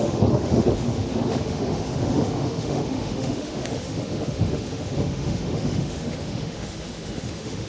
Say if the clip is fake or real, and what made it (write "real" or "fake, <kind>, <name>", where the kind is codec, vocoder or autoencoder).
fake, autoencoder, DAC-VAE